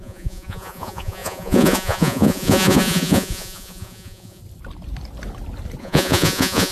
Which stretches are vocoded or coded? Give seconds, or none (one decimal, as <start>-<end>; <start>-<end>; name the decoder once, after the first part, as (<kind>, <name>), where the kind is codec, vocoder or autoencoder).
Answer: 0.0-4.4 (vocoder, Vocos); 5.8-6.7